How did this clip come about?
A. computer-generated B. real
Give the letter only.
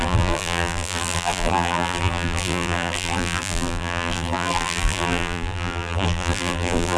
A